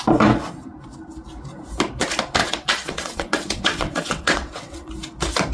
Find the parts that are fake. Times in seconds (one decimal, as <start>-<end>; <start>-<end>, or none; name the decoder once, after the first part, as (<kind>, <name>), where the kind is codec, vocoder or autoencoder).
2.4-4.9 (vocoder, WaveNeXt)